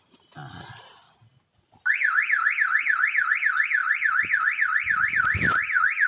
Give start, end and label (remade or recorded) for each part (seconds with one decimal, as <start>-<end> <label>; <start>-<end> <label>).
0.0-6.1 recorded